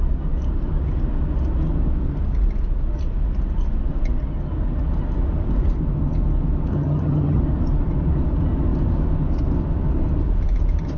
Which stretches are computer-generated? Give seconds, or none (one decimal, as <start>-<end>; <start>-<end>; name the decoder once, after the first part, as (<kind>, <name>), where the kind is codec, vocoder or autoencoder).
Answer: 6.7-7.4 (vocoder, HiFi-GAN)

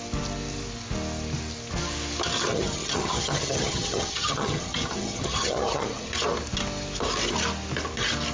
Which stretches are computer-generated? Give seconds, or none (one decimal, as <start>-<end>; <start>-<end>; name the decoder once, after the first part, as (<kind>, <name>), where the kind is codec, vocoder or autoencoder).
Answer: 2.5-6.1 (vocoder, HiFi-GAN)